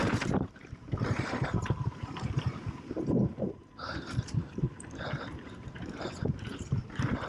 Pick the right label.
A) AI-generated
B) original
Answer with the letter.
A